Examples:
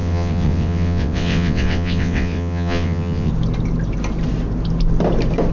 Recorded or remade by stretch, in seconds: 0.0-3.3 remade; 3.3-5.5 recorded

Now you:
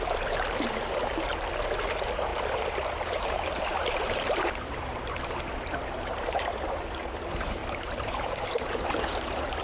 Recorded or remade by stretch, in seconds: 0.0-1.3 remade; 1.3-1.8 recorded; 1.8-2.3 remade; 2.3-3.1 recorded; 3.1-9.6 remade